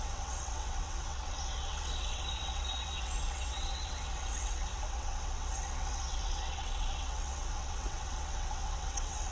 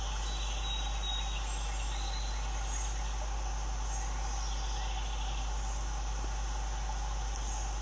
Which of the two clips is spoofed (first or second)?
first